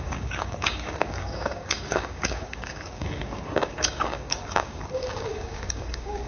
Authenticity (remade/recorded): remade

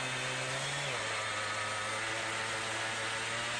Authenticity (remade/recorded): recorded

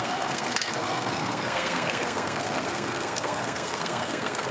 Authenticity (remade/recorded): remade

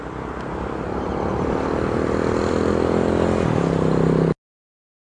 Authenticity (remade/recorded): recorded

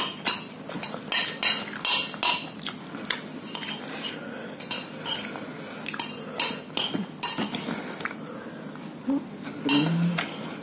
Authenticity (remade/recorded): recorded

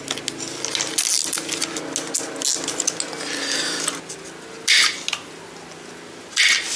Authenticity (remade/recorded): recorded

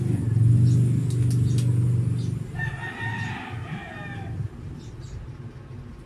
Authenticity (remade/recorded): recorded